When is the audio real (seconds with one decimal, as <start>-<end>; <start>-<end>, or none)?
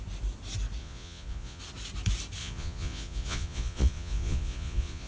0.0-0.8; 1.6-2.4